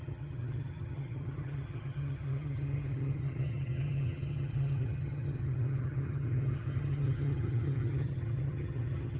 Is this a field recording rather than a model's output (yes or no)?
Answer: no